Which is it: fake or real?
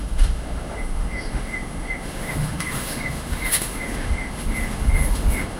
fake